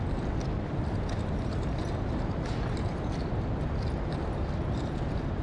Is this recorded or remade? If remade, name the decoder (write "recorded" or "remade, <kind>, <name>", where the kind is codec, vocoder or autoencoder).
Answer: recorded